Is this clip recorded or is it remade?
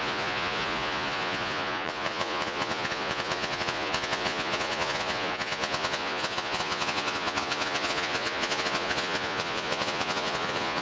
remade